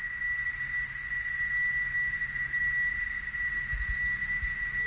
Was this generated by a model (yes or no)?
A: no